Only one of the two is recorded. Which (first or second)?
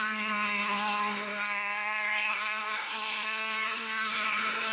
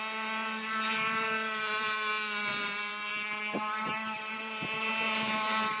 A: second